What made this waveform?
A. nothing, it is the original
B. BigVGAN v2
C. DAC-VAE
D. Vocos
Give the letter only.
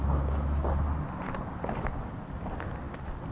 A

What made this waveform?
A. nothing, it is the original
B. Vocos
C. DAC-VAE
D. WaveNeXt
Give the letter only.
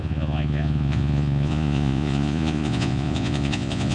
B